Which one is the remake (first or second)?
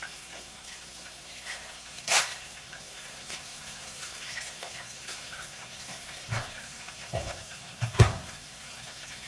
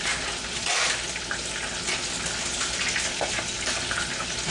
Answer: first